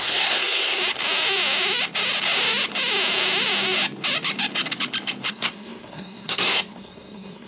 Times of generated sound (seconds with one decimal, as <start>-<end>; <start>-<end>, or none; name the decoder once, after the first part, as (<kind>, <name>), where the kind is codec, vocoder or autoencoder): 0.0-0.8 (codec, SNAC); 5.3-7.5